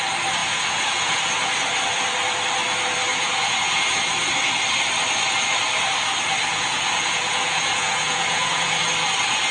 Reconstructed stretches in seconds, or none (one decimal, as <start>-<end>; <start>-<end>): 0.4-1.2; 3.1-3.9; 6.5-8.8